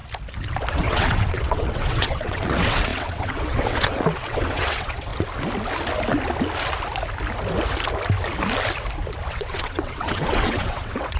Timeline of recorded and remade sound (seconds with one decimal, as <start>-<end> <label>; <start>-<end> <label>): 0.0-0.7 recorded; 0.7-5.1 remade; 5.1-9.3 recorded; 9.3-11.2 remade